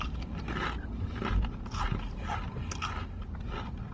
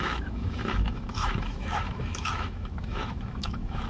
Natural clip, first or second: first